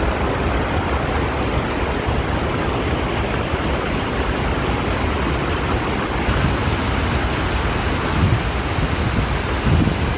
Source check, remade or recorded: recorded